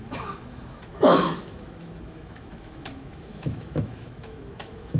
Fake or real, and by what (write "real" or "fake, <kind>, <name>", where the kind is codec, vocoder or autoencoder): fake, autoencoder, DAC-VAE